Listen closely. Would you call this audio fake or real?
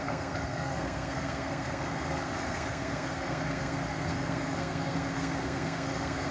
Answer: fake